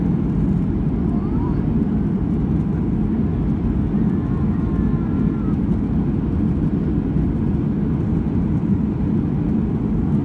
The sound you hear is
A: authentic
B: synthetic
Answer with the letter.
A